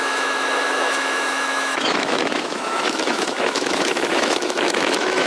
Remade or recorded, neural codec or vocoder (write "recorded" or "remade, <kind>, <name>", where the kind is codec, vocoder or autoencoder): remade, autoencoder, DAC-VAE